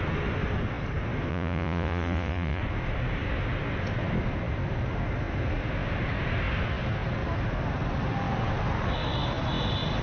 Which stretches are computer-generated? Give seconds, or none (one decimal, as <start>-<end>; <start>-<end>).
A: 1.3-2.6